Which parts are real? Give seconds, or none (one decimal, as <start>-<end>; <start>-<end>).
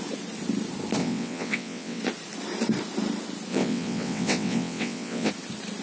0.0-1.0; 2.0-3.5; 5.3-5.8